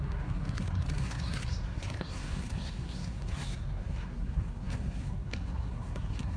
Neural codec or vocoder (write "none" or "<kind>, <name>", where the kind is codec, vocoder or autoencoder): codec, SNAC